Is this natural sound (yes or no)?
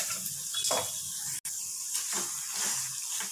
yes